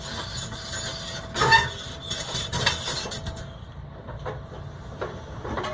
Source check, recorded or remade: recorded